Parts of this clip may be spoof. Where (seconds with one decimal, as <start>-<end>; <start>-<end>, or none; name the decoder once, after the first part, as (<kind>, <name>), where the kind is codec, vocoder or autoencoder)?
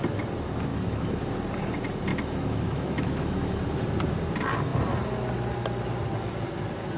0.7-1.2 (autoencoder, DAC-VAE); 2.1-3.6